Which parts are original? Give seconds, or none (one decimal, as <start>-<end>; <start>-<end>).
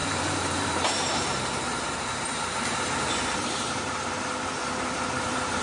none